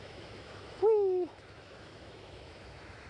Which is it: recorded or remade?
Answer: remade